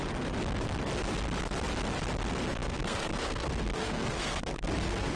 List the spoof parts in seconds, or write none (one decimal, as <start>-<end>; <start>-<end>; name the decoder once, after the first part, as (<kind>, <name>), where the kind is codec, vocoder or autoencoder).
2.6-5.2 (codec, SNAC)